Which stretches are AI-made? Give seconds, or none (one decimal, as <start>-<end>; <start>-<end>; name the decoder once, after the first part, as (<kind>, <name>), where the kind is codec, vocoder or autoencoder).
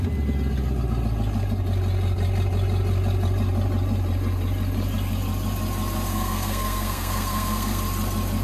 6.1-7.8 (codec, SNAC)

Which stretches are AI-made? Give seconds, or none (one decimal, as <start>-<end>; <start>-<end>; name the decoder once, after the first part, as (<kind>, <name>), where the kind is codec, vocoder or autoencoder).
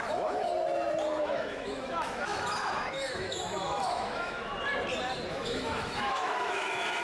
0.0-0.5 (autoencoder, DAC-VAE); 1.2-4.5; 5.3-7.0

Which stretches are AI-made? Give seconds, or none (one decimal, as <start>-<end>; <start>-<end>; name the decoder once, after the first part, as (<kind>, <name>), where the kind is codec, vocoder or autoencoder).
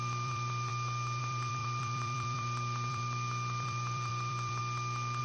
0.0-0.7 (vocoder, BigVGAN v2); 1.2-4.6